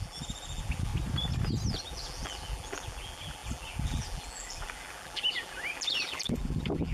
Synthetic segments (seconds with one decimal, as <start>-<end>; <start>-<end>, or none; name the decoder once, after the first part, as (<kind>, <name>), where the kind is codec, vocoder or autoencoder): 0.0-0.9 (vocoder, BigVGAN v2); 1.7-6.9